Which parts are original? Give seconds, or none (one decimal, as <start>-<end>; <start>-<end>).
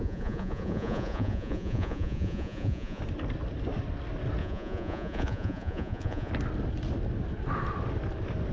3.0-4.4; 6.3-8.5